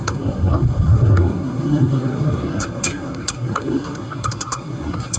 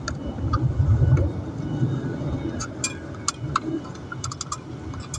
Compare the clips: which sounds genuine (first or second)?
second